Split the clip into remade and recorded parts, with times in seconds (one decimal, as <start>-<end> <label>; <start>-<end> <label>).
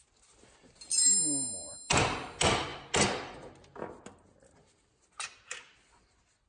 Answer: 0.0-6.5 recorded